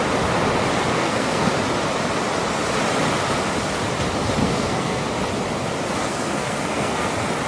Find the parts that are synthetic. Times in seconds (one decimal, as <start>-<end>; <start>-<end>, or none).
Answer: 0.9-1.5; 4.4-5.0; 6.0-7.1